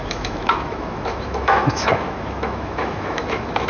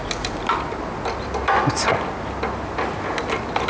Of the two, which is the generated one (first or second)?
first